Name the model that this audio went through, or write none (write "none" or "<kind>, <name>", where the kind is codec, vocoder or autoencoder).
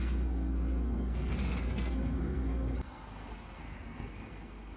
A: codec, SNAC